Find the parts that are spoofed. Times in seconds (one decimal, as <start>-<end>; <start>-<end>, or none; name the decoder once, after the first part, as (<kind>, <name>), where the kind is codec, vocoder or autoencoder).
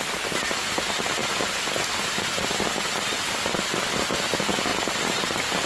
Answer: none